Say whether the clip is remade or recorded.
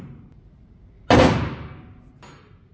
recorded